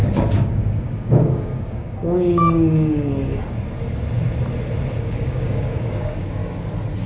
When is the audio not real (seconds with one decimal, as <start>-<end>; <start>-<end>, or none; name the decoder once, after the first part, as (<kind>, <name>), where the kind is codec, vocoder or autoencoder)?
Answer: 0.0-3.1 (codec, DAC); 5.0-6.4